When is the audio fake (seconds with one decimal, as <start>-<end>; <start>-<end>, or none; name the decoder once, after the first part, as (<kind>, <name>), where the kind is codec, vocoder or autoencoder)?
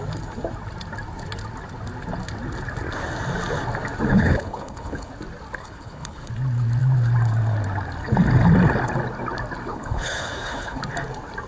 4.1-5.1 (codec, HILCodec); 5.6-6.3; 9.7-10.8